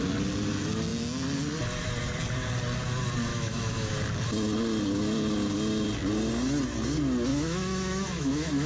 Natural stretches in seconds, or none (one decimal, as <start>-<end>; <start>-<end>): 0.0-3.3; 3.9-7.3